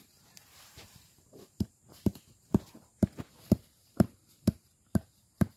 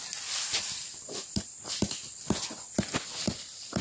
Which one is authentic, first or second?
second